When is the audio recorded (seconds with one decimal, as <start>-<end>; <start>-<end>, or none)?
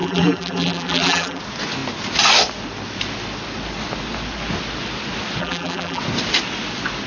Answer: 1.4-5.4; 6.0-7.1